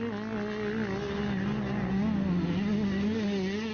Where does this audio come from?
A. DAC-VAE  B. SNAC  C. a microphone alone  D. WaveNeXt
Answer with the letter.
C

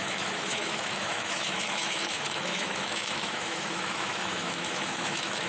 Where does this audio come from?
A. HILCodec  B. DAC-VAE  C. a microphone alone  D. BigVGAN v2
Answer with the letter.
B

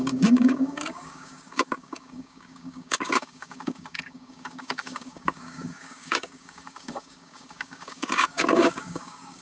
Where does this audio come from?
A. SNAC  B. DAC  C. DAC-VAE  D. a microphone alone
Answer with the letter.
B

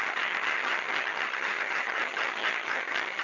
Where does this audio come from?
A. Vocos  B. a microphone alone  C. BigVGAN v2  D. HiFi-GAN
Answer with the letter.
D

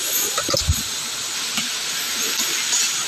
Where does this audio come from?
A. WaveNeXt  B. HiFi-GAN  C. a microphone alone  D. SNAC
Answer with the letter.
C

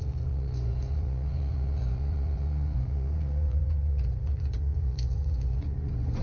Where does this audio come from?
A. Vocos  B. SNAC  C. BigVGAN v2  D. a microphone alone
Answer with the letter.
A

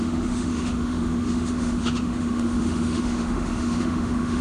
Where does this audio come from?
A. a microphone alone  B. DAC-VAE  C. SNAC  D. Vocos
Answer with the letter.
B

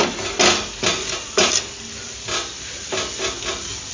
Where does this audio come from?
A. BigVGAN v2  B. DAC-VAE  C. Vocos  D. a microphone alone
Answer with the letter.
D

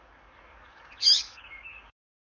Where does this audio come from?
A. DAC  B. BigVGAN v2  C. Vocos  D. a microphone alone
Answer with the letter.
A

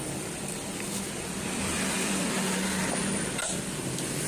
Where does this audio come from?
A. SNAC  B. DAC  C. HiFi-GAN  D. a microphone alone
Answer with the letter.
D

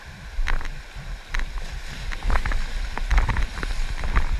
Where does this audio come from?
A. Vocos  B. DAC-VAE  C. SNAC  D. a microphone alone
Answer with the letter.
D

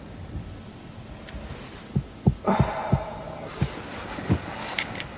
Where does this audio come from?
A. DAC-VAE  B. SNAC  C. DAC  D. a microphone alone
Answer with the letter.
D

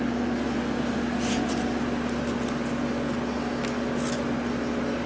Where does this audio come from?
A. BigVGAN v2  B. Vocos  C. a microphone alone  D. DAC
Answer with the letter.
C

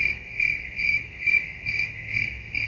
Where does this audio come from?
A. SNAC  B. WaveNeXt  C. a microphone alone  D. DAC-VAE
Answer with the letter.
A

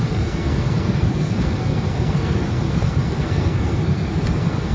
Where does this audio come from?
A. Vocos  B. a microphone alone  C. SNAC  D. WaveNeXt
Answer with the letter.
C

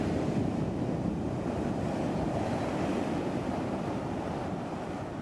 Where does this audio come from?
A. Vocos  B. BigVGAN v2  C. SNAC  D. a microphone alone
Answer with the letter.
B